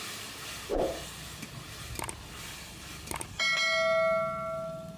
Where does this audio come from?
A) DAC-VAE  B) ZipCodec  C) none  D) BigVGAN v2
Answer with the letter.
C